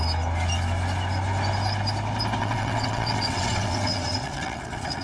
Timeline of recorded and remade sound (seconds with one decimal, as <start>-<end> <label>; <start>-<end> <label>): 0.0-2.4 recorded; 2.4-5.0 remade